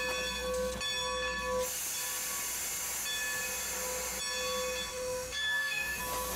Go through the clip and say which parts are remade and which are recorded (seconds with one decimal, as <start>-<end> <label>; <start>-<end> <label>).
0.0-4.9 recorded; 4.9-6.0 remade; 6.0-6.4 recorded